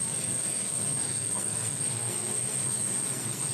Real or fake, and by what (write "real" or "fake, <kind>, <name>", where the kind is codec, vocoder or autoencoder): fake, codec, SNAC